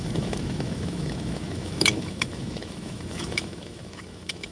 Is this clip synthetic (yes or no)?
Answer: yes